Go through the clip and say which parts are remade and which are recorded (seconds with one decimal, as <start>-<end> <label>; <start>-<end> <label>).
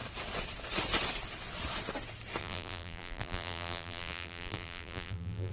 0.0-2.4 recorded; 2.4-5.5 remade